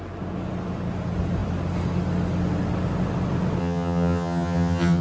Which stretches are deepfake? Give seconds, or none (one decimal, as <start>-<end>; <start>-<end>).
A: 3.6-5.0